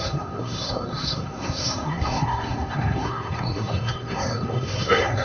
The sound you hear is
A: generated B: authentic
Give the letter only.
A